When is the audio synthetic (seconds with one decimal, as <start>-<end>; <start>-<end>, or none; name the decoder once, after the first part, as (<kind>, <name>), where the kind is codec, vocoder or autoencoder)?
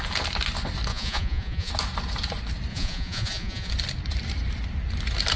0.9-1.7 (vocoder, Vocos); 2.7-3.7